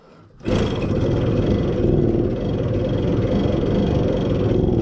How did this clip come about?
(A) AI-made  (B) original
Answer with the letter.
B